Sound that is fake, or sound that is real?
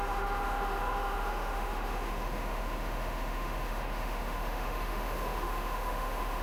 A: fake